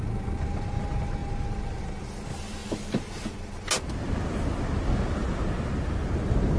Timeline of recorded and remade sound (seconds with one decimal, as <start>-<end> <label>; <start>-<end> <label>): 0.0-6.6 recorded